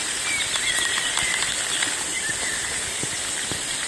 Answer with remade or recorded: remade